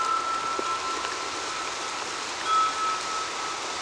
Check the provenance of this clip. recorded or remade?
recorded